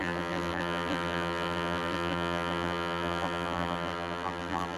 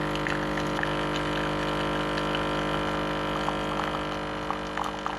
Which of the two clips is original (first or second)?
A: second